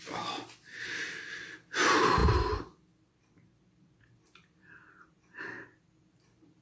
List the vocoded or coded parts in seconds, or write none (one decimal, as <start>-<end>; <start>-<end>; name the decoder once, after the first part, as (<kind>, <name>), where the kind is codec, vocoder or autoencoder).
none